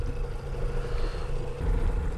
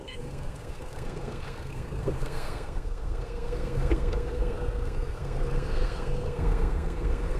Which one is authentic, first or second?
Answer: first